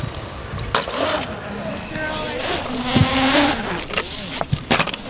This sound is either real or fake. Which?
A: real